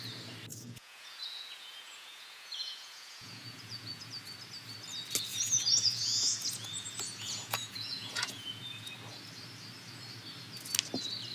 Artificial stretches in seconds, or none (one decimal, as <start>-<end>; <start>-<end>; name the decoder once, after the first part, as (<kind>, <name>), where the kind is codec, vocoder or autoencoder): 0.5-4.2 (vocoder, Vocos); 5.3-8.9